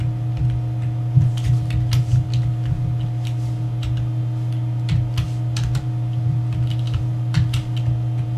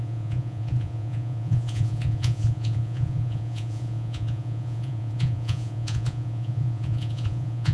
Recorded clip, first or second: first